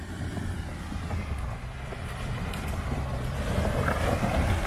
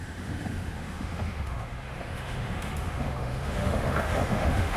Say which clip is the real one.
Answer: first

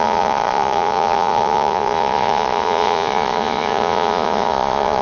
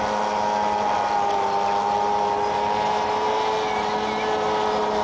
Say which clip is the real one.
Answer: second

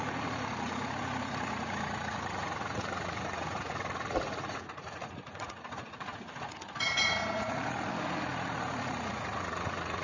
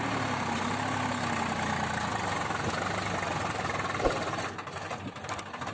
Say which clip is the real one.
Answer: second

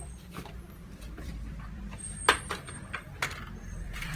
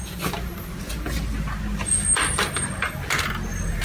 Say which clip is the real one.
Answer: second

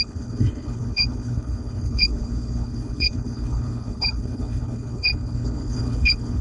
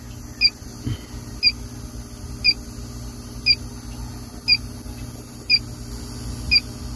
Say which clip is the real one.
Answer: second